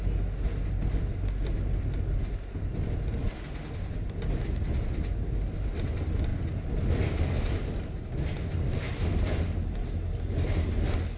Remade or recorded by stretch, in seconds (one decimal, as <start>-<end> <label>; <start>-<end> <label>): 0.0-11.2 recorded